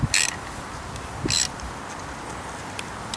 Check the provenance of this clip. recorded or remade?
recorded